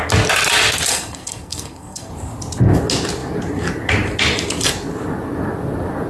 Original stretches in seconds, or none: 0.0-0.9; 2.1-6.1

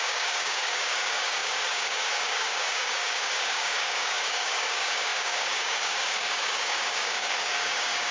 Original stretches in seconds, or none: none

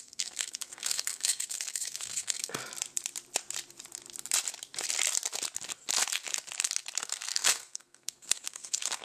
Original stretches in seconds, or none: 2.6-7.0

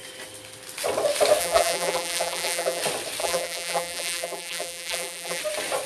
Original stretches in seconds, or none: 0.0-1.4; 2.8-3.2; 5.4-5.9

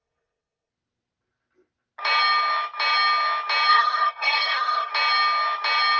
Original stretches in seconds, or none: 0.7-3.7; 4.9-6.0